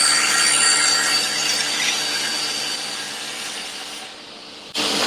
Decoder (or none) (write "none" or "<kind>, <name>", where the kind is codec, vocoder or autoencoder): vocoder, BigVGAN v2